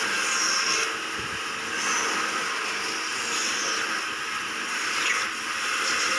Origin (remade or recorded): recorded